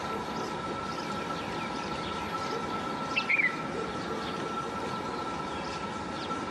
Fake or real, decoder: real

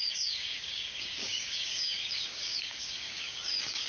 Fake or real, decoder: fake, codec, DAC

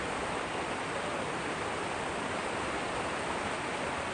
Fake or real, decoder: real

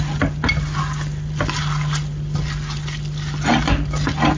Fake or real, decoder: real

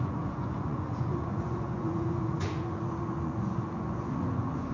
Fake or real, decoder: fake, vocoder, Vocos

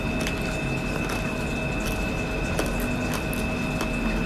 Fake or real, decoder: real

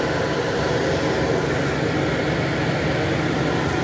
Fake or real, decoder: real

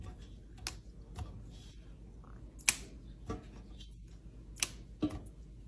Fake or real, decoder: real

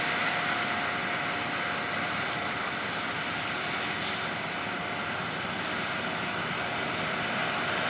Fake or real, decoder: real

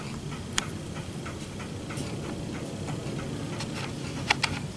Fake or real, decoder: real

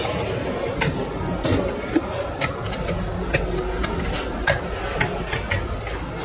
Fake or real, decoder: real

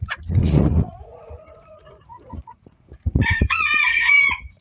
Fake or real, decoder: fake, vocoder, Vocos